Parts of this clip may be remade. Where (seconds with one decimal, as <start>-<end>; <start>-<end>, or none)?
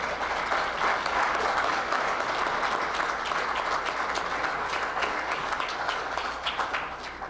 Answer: 0.9-2.3; 4.5-6.5